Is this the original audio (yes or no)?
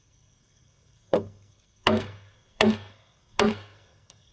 no